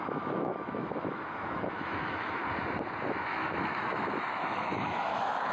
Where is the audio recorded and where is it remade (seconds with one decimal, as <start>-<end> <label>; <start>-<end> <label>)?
0.0-2.4 remade; 2.4-3.0 recorded; 3.0-5.5 remade